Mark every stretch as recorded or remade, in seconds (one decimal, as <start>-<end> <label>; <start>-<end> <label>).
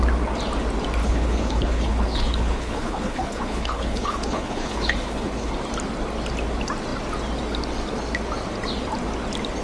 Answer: 0.0-1.0 recorded; 1.0-5.5 remade; 5.5-9.6 recorded